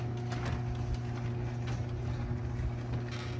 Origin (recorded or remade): recorded